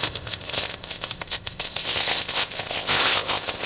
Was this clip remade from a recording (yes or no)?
yes